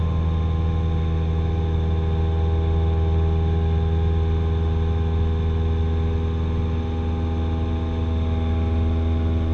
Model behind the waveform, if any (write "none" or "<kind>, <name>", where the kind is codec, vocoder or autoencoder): none